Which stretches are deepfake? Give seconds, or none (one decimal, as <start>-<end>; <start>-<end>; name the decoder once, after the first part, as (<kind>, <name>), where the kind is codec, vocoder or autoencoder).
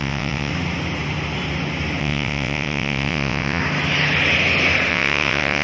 0.0-0.5 (vocoder, WaveNeXt); 2.0-3.6; 4.9-5.6